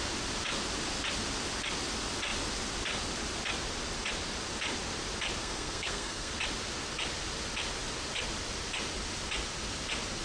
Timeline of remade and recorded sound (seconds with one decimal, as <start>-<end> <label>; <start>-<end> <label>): 0.0-5.4 recorded; 5.4-6.3 remade; 6.3-10.2 recorded